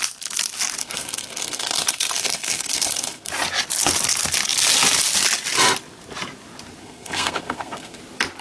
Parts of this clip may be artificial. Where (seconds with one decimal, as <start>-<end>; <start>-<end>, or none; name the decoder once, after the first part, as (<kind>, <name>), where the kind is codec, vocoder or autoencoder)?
0.8-3.3 (codec, SNAC); 6.8-8.0